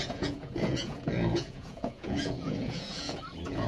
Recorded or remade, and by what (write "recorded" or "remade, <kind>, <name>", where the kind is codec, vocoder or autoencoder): remade, vocoder, Vocos